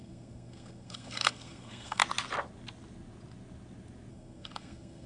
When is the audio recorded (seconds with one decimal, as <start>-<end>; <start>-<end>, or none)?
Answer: 2.0-4.1